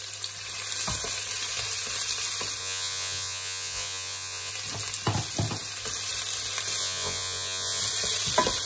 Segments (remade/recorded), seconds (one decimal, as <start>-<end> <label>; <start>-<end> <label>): 0.0-2.6 recorded; 2.6-4.5 remade; 4.5-6.8 recorded; 6.8-7.8 remade; 7.8-8.7 recorded